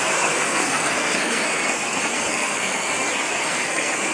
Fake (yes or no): yes